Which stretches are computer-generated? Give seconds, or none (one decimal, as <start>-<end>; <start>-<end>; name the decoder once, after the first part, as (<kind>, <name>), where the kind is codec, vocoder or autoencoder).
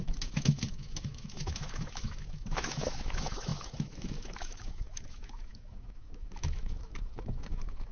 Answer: 0.0-7.9 (autoencoder, DAC-VAE)